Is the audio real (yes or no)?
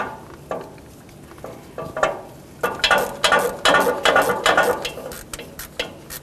yes